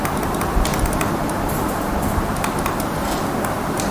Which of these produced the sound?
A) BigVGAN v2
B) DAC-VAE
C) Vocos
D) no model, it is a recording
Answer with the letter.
D